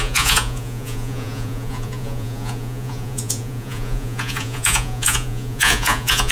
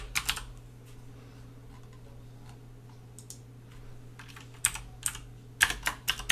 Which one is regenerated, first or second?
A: first